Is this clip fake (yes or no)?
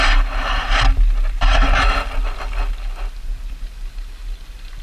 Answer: no